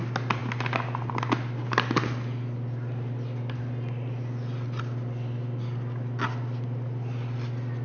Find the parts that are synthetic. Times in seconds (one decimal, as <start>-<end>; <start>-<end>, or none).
none